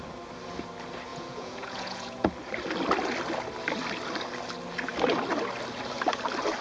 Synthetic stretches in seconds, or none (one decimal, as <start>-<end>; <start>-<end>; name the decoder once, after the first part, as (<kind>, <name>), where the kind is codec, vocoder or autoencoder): 1.1-2.3 (vocoder, Vocos)